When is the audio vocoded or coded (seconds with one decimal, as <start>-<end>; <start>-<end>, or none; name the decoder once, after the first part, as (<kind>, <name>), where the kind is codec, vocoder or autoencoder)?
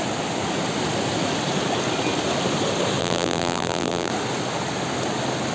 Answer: 3.0-4.1 (vocoder, BigVGAN v2)